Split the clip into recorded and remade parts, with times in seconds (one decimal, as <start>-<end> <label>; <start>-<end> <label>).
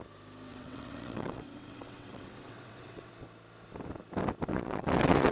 0.0-0.5 recorded; 0.5-3.1 remade; 3.1-4.5 recorded; 4.5-5.3 remade